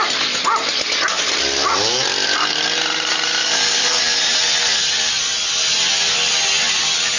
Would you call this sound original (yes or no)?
yes